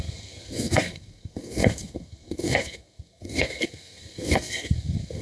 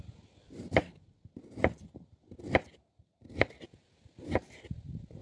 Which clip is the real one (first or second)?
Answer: second